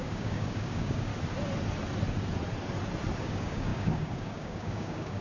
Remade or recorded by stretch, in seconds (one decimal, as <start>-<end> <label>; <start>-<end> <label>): 0.0-1.1 remade; 1.1-3.2 recorded; 3.2-5.2 remade